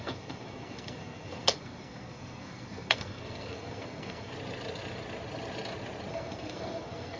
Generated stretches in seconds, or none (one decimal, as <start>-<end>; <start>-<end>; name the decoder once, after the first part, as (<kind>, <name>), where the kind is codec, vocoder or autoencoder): 0.0-4.3 (codec, SNAC); 6.1-7.2